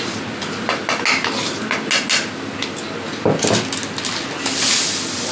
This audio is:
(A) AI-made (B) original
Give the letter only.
B